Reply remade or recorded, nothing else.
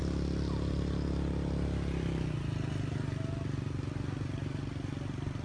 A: recorded